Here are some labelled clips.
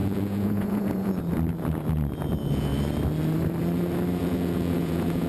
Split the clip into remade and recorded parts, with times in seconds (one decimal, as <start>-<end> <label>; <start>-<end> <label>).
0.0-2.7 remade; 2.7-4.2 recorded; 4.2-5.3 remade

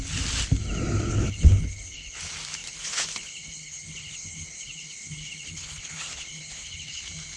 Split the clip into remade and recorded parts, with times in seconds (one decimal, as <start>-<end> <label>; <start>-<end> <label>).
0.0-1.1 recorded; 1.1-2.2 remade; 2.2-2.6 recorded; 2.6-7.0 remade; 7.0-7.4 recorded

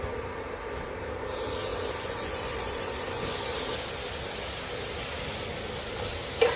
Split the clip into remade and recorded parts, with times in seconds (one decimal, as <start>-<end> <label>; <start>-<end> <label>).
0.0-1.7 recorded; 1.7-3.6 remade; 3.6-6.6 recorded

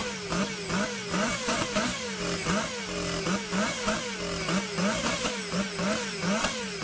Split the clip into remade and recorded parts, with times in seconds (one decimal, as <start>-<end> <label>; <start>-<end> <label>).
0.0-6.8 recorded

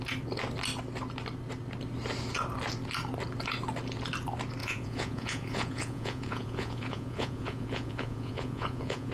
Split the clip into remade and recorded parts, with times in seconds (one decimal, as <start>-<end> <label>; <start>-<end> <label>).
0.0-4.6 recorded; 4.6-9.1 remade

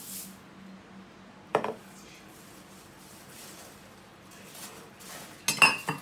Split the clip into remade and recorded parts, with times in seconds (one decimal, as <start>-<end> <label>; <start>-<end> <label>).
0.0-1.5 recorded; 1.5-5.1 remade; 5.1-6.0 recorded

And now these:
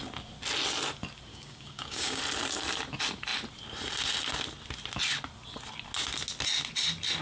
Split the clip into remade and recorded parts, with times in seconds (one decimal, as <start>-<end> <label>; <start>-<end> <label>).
0.0-1.3 recorded; 1.3-2.2 remade; 2.2-7.2 recorded